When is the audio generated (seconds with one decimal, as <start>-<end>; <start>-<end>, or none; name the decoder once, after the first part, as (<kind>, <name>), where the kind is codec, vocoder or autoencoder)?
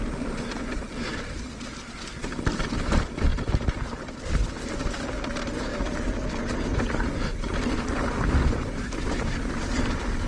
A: 0.0-3.3 (vocoder, BigVGAN v2); 4.3-5.7; 7.3-10.3